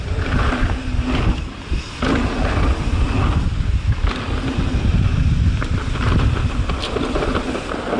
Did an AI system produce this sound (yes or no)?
no